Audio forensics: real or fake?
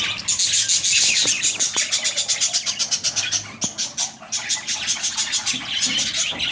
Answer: real